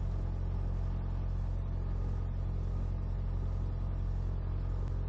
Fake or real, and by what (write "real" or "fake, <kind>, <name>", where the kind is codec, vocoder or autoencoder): real